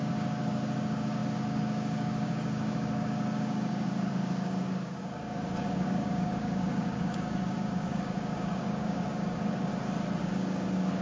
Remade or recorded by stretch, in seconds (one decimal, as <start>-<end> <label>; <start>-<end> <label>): 0.0-9.7 remade; 9.7-10.2 recorded; 10.2-11.0 remade